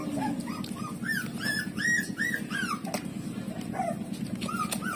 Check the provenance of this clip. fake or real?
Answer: real